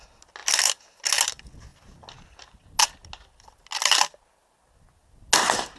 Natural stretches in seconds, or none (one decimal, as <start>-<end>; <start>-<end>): 0.0-5.8